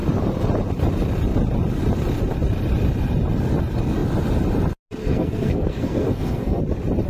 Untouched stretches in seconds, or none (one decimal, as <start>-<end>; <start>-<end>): 0.0-5.0; 6.6-7.1